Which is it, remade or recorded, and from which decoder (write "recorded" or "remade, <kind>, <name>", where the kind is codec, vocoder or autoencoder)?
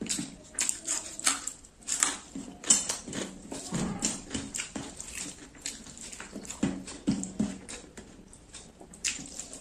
remade, vocoder, BigVGAN v2